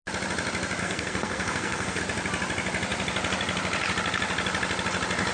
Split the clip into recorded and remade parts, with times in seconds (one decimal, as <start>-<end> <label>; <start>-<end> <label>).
0.0-0.8 recorded; 0.8-2.0 remade; 2.0-5.3 recorded